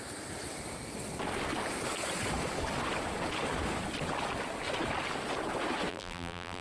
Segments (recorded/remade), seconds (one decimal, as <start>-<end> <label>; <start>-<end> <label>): 0.0-5.9 recorded; 5.9-6.6 remade

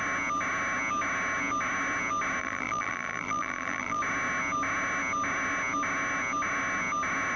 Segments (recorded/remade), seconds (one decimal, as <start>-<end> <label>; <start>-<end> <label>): 0.0-2.4 recorded; 2.4-4.0 remade; 4.0-7.4 recorded

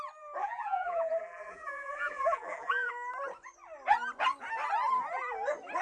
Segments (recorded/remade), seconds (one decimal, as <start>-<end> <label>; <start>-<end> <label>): 0.0-0.4 recorded; 0.4-2.9 remade; 2.9-5.8 recorded

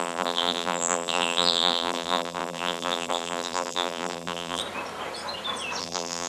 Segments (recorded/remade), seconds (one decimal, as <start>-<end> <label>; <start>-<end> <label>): 0.0-4.6 remade; 4.6-5.8 recorded; 5.8-6.3 remade

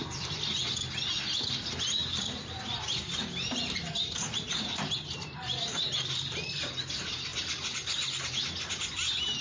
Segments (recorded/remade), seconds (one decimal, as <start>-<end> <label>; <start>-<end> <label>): 0.0-2.0 recorded; 2.0-6.7 remade; 6.7-9.4 recorded

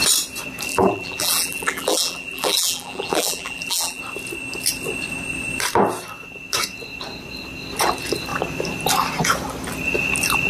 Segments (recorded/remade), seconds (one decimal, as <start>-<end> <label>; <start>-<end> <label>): 0.0-0.7 recorded; 0.7-4.0 remade; 4.0-10.5 recorded